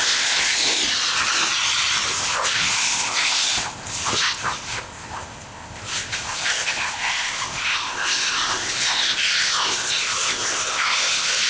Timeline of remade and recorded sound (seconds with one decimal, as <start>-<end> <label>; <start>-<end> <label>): 0.0-0.8 remade; 0.8-2.1 recorded; 2.1-11.5 remade